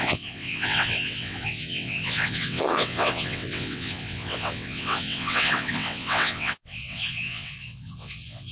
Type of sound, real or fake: fake